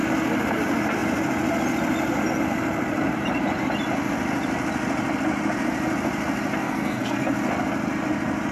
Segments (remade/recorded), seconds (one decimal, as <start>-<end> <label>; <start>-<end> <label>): 0.0-6.6 recorded; 6.6-7.2 remade; 7.2-8.5 recorded